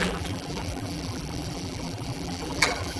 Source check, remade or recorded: remade